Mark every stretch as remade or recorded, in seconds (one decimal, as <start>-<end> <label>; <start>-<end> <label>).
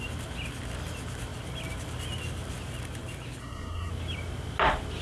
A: 0.0-3.4 recorded; 3.4-3.9 remade; 3.9-5.0 recorded